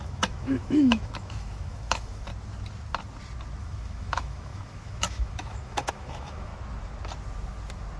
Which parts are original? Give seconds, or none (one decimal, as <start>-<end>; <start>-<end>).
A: 2.3-3.6; 6.5-8.0